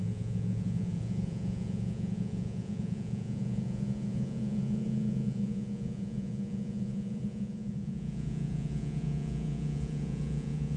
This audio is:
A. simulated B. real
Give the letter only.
A